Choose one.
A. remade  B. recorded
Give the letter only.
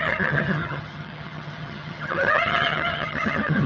A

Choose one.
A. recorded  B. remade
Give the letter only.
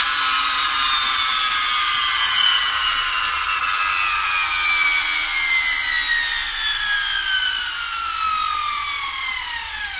A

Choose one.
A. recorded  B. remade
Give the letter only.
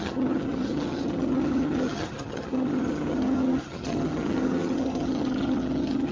B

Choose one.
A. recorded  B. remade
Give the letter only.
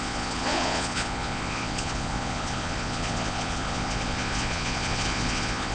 B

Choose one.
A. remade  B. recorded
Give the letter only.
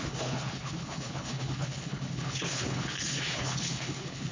A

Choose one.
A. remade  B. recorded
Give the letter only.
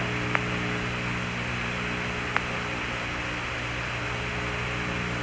B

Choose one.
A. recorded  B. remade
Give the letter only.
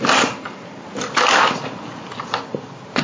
A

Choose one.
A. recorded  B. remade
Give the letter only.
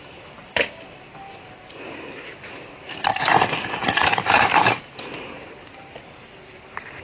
A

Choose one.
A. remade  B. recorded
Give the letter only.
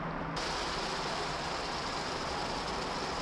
B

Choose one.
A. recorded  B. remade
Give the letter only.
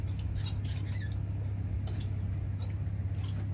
A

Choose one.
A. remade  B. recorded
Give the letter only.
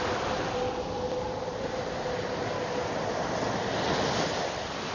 B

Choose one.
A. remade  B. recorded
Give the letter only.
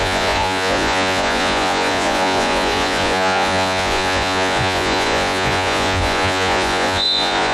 A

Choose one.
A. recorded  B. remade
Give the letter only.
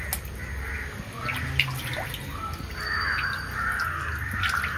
A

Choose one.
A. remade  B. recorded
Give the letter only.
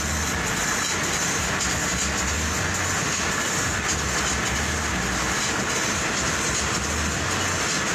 B